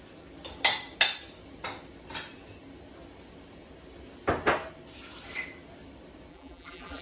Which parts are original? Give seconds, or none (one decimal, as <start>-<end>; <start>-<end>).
0.0-6.3

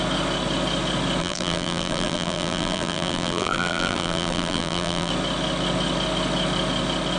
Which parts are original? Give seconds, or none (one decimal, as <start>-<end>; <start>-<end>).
0.0-1.2; 5.1-7.2

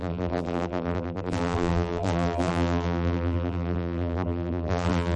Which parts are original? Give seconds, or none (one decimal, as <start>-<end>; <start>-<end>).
none

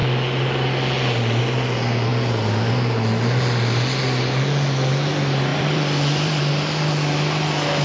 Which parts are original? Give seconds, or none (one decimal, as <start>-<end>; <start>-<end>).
0.0-5.5; 6.4-7.8